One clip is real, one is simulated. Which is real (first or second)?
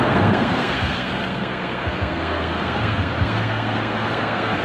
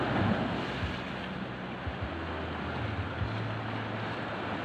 second